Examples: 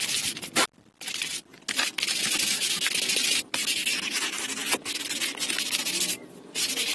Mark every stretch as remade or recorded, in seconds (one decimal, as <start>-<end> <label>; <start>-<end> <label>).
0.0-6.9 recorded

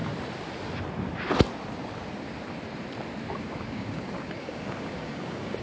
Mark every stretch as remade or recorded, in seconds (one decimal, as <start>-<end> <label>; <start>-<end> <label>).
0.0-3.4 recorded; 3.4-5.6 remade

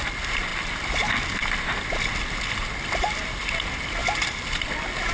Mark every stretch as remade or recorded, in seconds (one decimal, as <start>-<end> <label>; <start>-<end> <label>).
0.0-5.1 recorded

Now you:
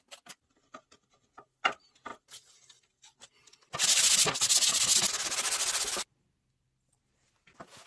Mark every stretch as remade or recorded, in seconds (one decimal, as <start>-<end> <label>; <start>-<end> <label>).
0.0-7.9 recorded

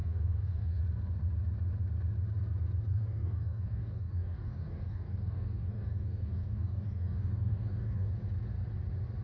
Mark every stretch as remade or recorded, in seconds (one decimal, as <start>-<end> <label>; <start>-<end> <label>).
0.0-0.8 remade; 0.8-2.9 recorded; 2.9-8.1 remade; 8.1-9.2 recorded

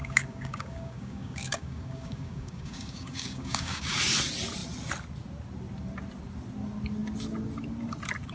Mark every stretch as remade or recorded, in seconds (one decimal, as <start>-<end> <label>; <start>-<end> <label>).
0.0-4.0 remade; 4.0-8.3 recorded